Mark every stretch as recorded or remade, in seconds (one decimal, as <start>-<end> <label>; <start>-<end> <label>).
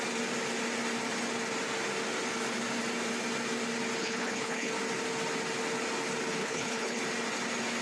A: 0.0-4.0 recorded; 4.0-4.7 remade; 4.7-6.4 recorded; 6.4-7.0 remade; 7.0-7.8 recorded